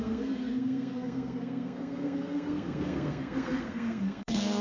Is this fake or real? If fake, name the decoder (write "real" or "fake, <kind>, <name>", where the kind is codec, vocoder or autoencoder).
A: fake, codec, SNAC